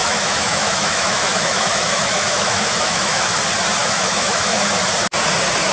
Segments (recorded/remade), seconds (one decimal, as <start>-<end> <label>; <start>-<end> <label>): 0.0-3.4 remade; 3.4-3.8 recorded; 3.8-4.7 remade; 4.7-5.7 recorded